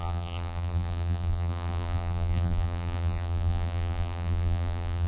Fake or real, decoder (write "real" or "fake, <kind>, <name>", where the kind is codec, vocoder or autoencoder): fake, vocoder, BigVGAN v2